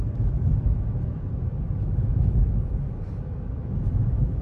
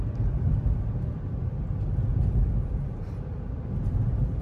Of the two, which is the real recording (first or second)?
second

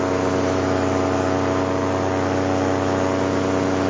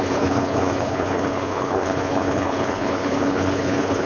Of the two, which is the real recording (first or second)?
first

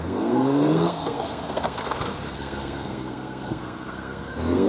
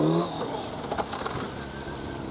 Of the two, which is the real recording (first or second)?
second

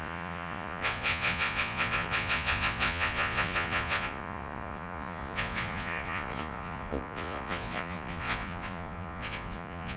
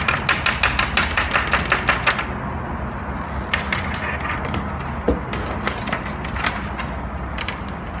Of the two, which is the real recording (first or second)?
second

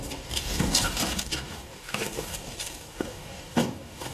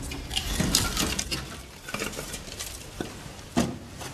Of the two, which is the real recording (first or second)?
second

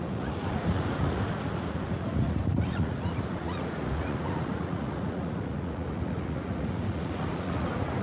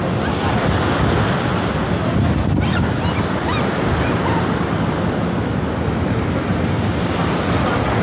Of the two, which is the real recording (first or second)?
second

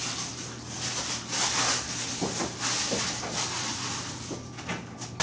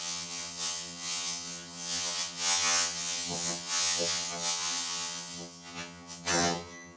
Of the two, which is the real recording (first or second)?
first